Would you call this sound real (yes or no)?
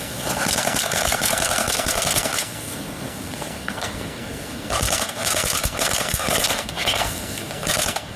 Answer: no